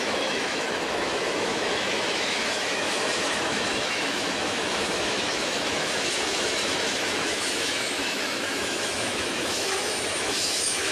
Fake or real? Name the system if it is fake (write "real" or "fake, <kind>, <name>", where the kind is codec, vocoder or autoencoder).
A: fake, autoencoder, DAC-VAE